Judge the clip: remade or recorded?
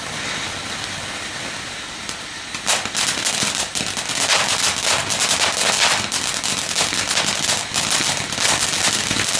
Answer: recorded